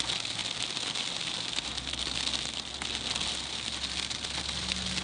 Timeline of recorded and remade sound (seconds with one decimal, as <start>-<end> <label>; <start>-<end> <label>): 0.0-5.0 recorded